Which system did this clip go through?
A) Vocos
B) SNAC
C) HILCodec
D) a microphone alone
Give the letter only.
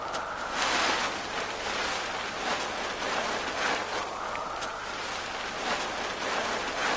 D